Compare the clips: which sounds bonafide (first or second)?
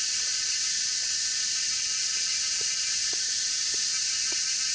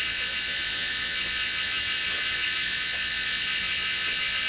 first